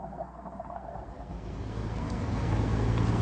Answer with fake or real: fake